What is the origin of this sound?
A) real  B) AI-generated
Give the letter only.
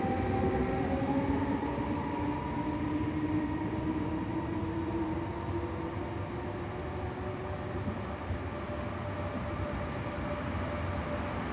A